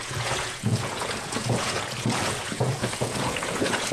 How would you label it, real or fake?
fake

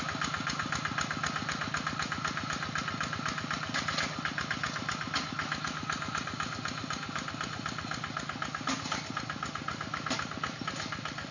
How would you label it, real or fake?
real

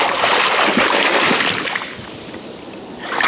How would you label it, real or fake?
real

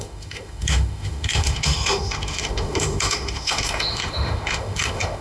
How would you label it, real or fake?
fake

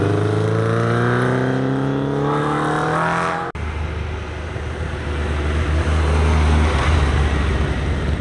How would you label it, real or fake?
real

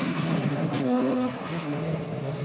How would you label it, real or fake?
fake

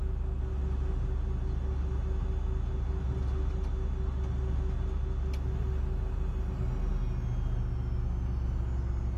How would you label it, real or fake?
real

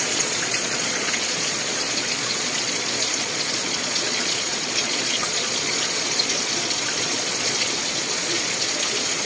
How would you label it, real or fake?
fake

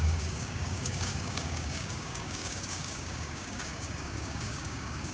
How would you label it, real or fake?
fake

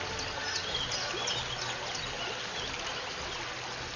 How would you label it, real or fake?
real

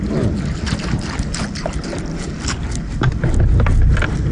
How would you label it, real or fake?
real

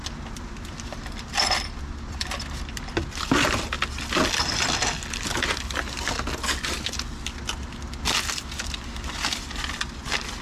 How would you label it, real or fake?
real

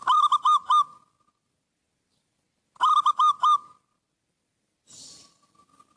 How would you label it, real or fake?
real